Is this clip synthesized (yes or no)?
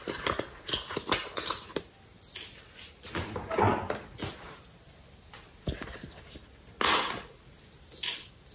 no